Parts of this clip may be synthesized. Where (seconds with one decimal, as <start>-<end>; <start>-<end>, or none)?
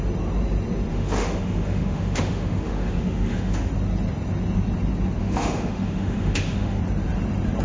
0.9-3.7; 5.2-6.8